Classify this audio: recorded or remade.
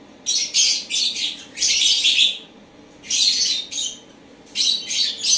recorded